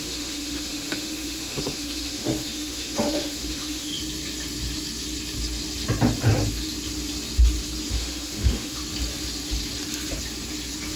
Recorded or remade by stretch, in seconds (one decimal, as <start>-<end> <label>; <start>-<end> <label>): 0.0-3.9 remade; 3.9-7.9 recorded; 7.9-8.8 remade; 8.8-11.0 recorded